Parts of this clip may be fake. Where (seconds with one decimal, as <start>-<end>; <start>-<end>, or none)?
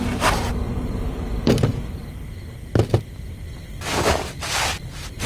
0.0-2.2; 3.7-5.3